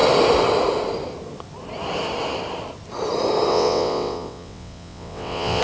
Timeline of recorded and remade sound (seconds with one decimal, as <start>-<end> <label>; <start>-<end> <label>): 0.0-3.5 recorded; 3.5-5.6 remade